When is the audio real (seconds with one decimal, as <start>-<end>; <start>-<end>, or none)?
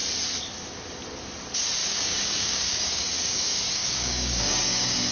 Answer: 0.0-1.8